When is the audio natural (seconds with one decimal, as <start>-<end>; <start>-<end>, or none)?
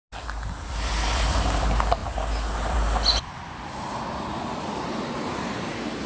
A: 0.0-6.1